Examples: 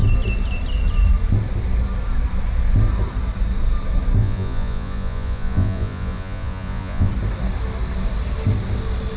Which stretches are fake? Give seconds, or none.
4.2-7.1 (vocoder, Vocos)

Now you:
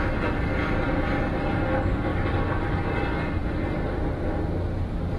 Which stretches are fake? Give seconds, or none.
none

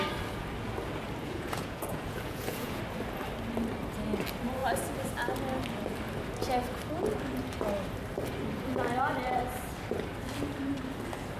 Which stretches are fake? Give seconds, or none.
1.2-2.8 (vocoder, Vocos)

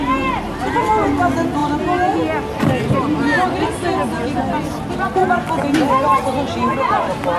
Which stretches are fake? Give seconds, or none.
none

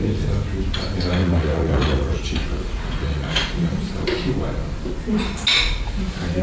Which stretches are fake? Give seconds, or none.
1.2-3.9 (vocoder, Vocos)